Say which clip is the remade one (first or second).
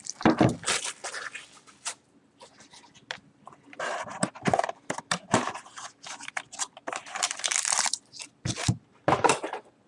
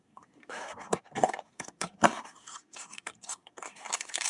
second